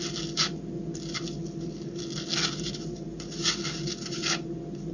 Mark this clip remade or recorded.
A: recorded